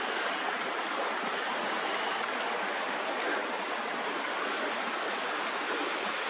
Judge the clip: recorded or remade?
recorded